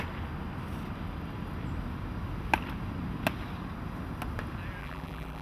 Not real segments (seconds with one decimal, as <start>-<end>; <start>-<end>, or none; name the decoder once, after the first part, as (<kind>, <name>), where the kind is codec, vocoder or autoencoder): 4.8-5.4 (vocoder, BigVGAN v2)